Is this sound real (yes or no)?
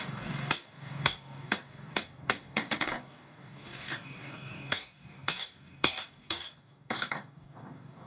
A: no